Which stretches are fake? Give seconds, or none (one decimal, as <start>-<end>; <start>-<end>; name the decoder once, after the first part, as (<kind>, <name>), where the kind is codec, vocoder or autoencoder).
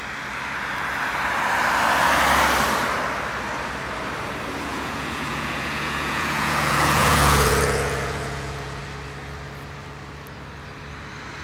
4.7-8.8 (vocoder, Vocos)